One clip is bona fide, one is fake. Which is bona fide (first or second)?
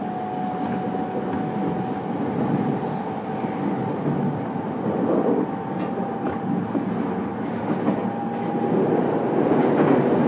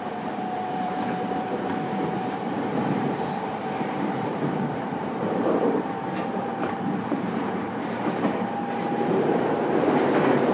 first